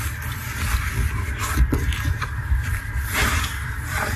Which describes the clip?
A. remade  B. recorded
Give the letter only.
B